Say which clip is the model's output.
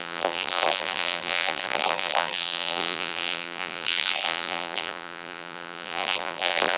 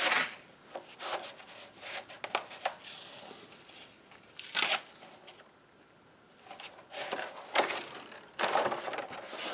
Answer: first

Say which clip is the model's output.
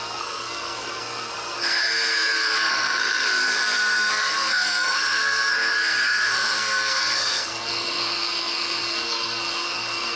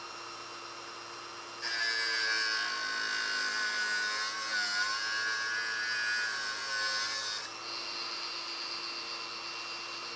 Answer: first